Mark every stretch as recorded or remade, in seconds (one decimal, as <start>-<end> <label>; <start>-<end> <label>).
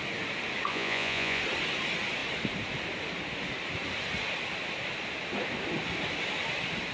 0.0-0.7 recorded; 0.7-1.4 remade; 1.4-6.9 recorded